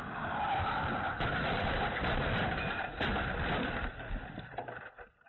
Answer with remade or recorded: remade